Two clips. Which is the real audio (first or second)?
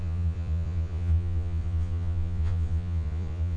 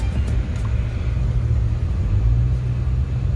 second